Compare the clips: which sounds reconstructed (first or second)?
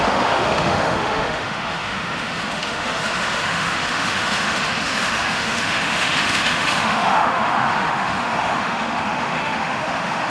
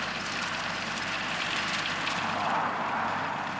first